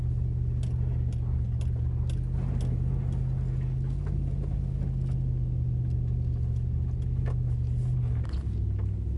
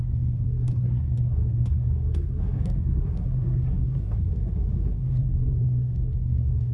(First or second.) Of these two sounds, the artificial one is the second